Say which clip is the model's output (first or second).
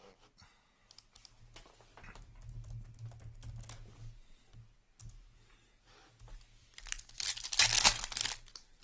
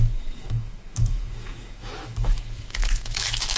second